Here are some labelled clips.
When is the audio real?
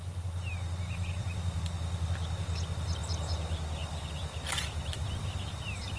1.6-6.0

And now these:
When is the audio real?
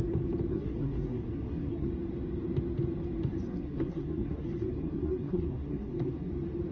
0.0-0.5; 1.9-3.5; 6.3-6.7